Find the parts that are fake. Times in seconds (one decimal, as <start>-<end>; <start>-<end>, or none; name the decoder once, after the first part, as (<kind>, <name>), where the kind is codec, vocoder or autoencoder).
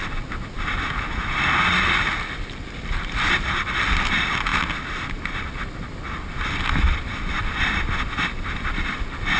none